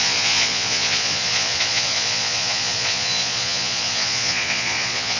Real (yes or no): no